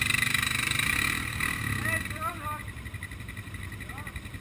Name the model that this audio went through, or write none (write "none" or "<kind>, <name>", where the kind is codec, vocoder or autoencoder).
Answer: vocoder, BigVGAN v2